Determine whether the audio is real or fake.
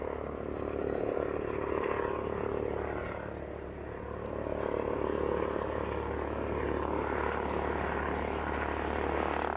real